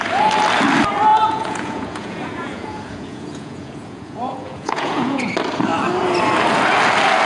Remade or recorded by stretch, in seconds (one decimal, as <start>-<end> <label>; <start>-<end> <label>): 0.0-1.1 recorded; 1.1-5.3 remade; 5.3-7.3 recorded